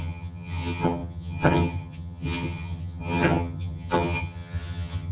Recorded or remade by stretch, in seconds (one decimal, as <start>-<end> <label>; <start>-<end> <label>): 0.0-5.1 remade

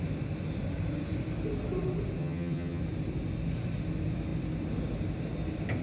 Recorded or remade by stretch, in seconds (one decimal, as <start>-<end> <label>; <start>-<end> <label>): 0.0-2.2 recorded; 2.2-2.8 remade; 2.8-5.8 recorded

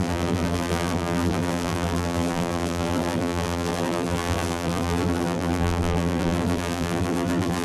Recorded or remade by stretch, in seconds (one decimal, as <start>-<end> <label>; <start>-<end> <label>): 0.0-7.6 remade

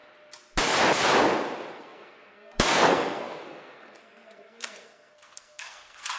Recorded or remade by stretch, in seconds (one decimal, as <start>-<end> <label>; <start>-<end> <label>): 0.0-1.7 recorded; 1.7-6.2 remade

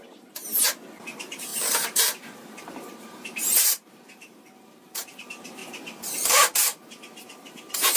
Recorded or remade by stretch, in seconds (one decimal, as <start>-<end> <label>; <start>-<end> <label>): 0.0-5.6 remade; 5.6-8.0 recorded

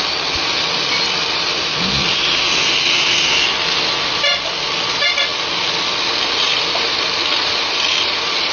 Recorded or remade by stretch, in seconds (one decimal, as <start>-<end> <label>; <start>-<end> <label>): 0.0-8.5 recorded